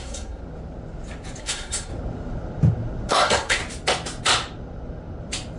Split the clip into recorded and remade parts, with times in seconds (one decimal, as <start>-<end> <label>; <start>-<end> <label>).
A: 0.0-0.4 remade; 0.4-1.4 recorded; 1.4-1.9 remade; 1.9-3.1 recorded; 3.1-3.6 remade; 3.6-5.6 recorded